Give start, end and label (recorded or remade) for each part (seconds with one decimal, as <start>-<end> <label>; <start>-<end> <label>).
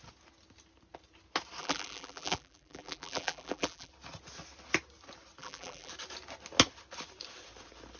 0.0-1.6 recorded; 1.6-3.9 remade; 3.9-5.4 recorded; 5.4-5.9 remade; 5.9-8.0 recorded